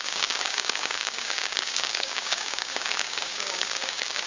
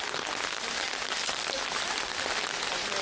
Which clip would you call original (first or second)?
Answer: second